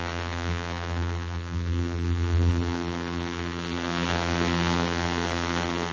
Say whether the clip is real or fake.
fake